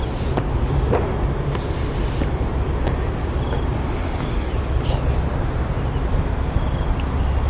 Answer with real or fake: real